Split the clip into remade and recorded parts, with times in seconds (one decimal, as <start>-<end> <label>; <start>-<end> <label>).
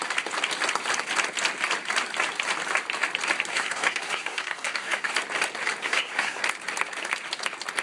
0.0-3.5 recorded; 3.5-5.1 remade; 5.1-5.8 recorded; 5.8-6.4 remade; 6.4-7.8 recorded